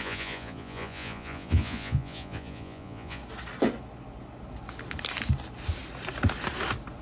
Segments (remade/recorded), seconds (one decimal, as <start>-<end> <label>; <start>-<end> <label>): 0.0-3.2 remade; 3.2-7.0 recorded